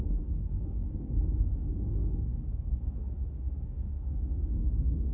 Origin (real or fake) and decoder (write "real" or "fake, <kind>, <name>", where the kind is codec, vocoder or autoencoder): fake, codec, SNAC